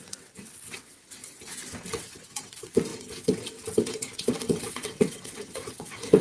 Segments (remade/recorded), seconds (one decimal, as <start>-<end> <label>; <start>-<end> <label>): 0.0-1.2 remade; 1.2-1.9 recorded; 1.9-6.2 remade